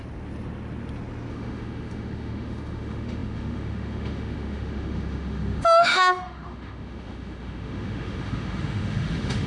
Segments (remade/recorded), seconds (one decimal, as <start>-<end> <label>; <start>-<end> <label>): 0.0-1.3 recorded; 1.3-9.5 remade